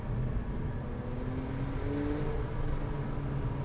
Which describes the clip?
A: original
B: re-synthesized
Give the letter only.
A